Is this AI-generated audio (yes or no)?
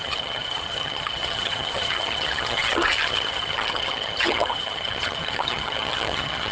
yes